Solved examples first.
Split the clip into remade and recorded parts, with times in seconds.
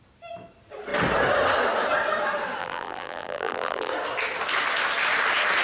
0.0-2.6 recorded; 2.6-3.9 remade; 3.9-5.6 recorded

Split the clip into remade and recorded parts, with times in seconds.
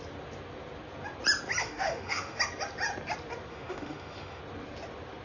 0.0-1.6 recorded; 1.6-2.4 remade; 2.4-3.5 recorded; 3.5-4.4 remade; 4.4-5.2 recorded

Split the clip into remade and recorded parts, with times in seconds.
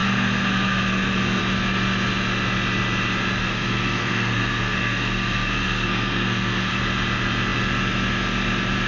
0.0-1.4 remade; 1.4-3.4 recorded; 3.4-6.8 remade; 6.8-8.9 recorded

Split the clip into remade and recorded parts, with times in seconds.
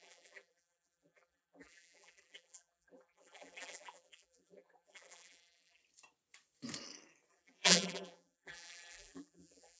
0.0-5.8 remade; 5.8-7.3 recorded; 7.3-9.8 remade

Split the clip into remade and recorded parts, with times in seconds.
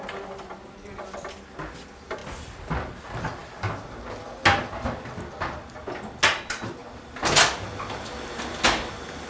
0.0-9.3 recorded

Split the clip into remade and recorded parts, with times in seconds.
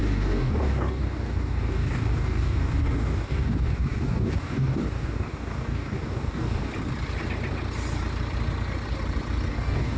0.0-6.7 remade; 6.7-9.5 recorded; 9.5-10.0 remade